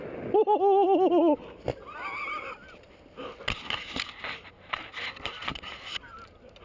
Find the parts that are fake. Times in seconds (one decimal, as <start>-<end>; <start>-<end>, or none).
none